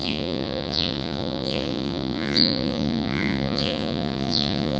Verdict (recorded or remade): remade